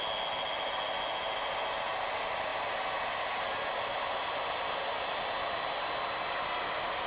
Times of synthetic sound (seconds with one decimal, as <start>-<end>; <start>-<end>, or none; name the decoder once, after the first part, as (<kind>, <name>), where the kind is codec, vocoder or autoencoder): none